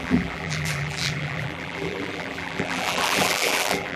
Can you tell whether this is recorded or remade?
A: remade